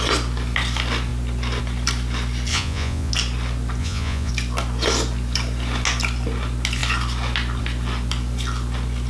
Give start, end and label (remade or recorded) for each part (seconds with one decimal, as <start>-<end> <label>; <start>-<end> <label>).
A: 0.0-2.5 recorded; 2.5-3.1 remade; 3.1-3.8 recorded; 3.8-4.3 remade; 4.3-9.1 recorded